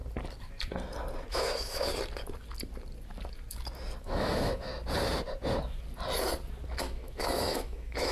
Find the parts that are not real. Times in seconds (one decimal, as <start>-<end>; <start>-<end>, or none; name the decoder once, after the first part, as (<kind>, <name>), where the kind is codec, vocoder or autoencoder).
1.3-1.9 (autoencoder, DAC-VAE); 4.0-4.7; 6.8-8.1